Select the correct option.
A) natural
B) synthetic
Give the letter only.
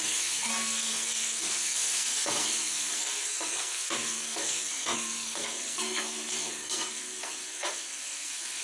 B